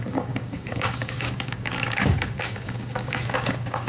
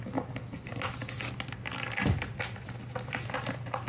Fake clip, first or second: first